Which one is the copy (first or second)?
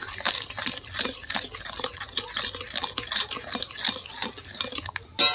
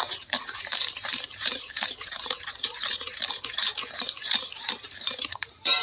second